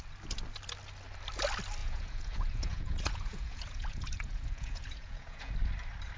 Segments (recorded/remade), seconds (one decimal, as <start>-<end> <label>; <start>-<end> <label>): 0.0-1.8 recorded; 1.8-5.5 remade; 5.5-6.2 recorded